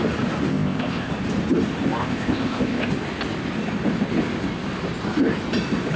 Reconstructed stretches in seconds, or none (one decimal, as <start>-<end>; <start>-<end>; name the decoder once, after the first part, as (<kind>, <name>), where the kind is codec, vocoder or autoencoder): 0.5-1.1 (codec, ZipCodec); 2.0-2.9